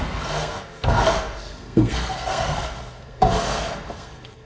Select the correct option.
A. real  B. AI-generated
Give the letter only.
B